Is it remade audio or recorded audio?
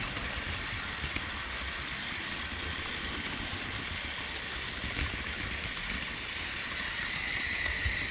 recorded